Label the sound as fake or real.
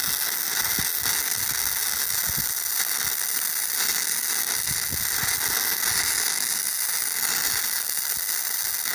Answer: real